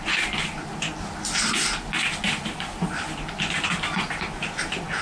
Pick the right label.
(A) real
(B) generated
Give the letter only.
A